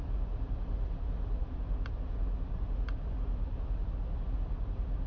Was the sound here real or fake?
real